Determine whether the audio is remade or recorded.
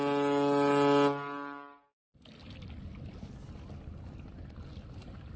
recorded